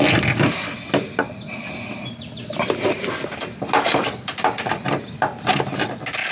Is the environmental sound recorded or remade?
recorded